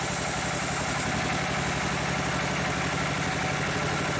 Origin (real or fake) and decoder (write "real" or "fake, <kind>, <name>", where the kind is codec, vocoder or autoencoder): real